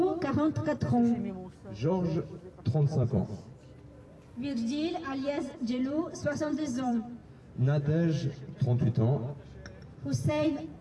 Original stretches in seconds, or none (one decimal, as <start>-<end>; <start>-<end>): 0.6-2.6; 7.2-10.3